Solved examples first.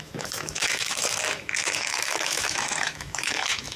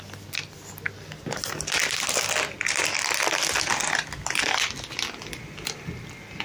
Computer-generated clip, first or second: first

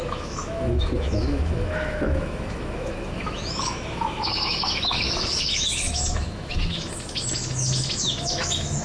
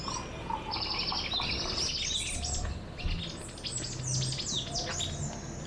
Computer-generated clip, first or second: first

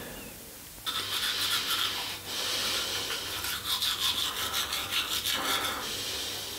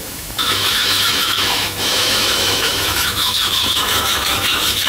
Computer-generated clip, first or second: second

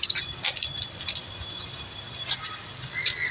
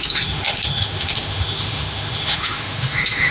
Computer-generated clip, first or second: second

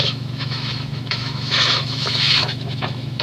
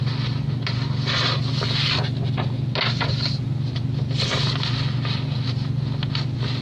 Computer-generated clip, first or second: first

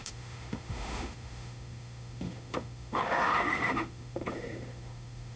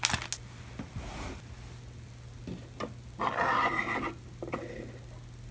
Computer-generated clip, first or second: first